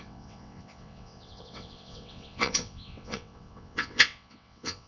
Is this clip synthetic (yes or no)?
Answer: yes